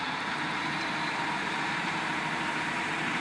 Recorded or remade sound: remade